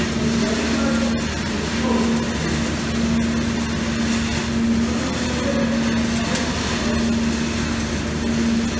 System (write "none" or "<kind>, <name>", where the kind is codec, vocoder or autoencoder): none